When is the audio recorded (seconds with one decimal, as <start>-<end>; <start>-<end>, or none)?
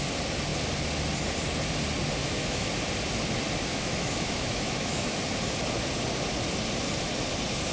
0.0-2.2; 2.7-3.7; 5.2-7.7